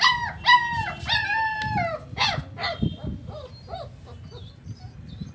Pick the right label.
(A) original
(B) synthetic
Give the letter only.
A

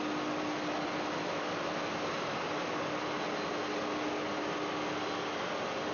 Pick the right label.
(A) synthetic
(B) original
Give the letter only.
B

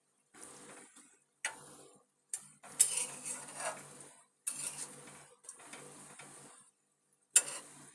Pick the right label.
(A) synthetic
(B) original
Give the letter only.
B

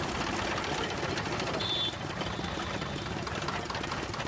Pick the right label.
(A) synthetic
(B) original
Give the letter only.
B